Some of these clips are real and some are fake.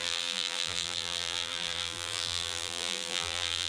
fake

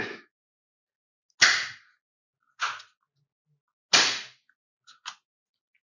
real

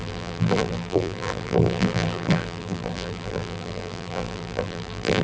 fake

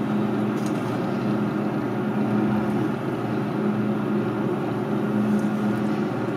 real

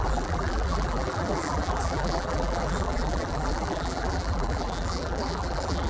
fake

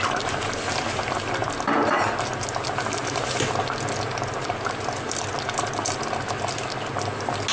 real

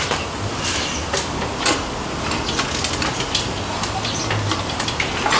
real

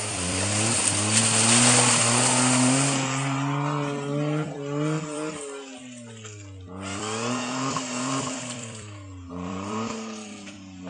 fake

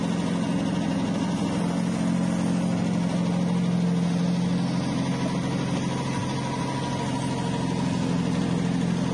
real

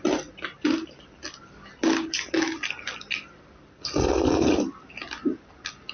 fake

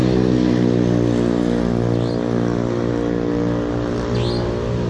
real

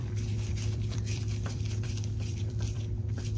fake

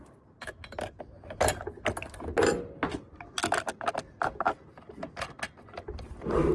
real